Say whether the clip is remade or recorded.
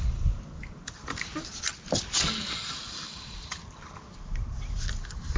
recorded